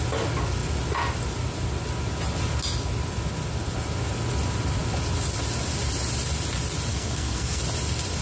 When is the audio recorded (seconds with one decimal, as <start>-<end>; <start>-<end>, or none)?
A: 0.0-6.9; 7.6-8.2